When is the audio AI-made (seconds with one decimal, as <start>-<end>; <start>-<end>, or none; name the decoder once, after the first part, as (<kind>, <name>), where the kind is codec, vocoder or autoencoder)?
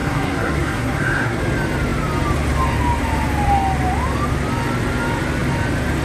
0.0-1.4 (codec, SNAC)